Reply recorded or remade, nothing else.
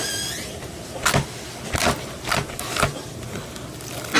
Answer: recorded